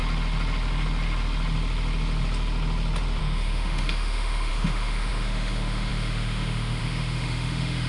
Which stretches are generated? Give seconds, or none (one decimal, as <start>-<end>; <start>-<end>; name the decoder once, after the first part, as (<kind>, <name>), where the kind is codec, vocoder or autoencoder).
3.2-7.9 (autoencoder, DAC-VAE)